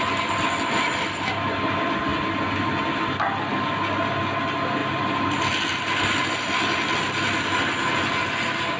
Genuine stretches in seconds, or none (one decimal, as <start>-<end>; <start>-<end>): 0.0-8.8